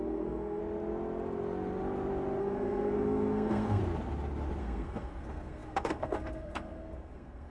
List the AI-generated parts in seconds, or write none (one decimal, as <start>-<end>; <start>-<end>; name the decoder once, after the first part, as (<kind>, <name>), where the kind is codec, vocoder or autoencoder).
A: 0.0-0.6 (codec, SNAC); 2.4-3.8; 4.6-7.5